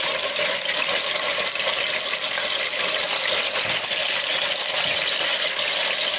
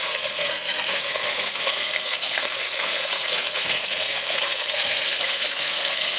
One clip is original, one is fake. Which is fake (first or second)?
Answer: second